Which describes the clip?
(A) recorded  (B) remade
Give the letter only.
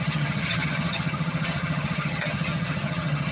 B